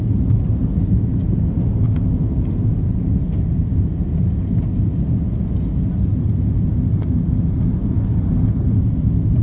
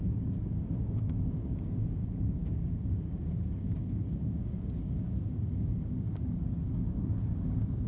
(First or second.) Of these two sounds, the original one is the first